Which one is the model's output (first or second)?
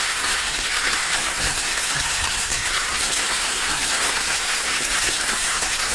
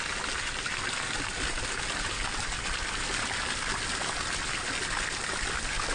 first